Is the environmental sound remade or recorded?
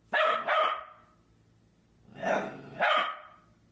recorded